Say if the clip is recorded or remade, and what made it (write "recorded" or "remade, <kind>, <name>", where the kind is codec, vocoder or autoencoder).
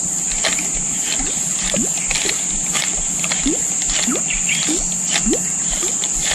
remade, vocoder, BigVGAN v2